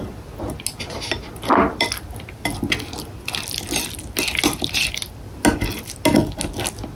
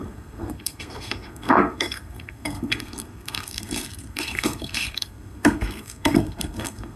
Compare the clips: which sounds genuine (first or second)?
first